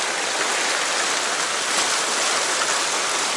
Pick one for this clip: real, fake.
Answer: real